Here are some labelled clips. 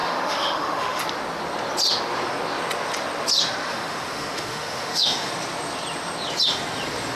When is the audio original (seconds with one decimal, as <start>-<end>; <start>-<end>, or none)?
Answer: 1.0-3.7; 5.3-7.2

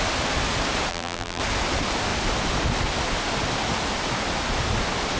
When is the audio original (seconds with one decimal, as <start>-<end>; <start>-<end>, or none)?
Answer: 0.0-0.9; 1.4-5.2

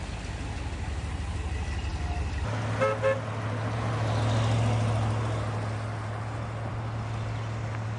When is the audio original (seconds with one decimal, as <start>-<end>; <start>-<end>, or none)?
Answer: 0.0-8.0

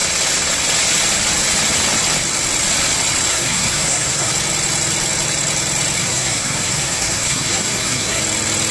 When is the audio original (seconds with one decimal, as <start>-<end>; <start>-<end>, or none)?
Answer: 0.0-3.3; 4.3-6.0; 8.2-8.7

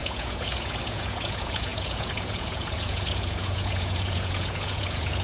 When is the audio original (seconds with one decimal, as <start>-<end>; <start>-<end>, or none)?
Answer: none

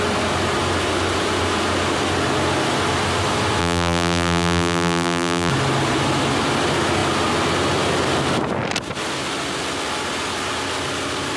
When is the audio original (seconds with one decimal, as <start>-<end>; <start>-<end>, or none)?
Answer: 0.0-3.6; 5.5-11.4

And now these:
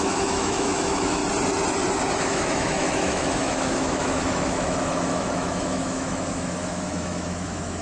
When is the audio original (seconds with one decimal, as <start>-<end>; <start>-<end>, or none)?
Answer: 1.2-2.2

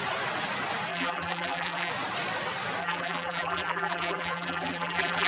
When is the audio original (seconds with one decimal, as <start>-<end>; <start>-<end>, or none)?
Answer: 0.0-0.9; 1.9-2.8